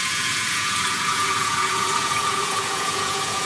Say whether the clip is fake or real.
fake